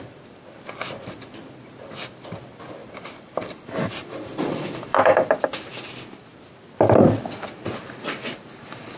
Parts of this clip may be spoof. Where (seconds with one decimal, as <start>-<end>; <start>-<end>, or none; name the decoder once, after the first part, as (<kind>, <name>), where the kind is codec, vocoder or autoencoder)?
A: 2.8-5.3 (vocoder, BigVGAN v2)